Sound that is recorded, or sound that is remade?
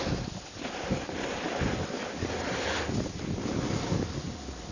recorded